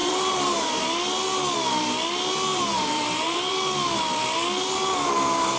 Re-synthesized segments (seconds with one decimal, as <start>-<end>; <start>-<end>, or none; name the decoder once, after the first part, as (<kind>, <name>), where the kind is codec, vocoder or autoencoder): 0.0-0.7 (vocoder, BigVGAN v2); 2.5-3.6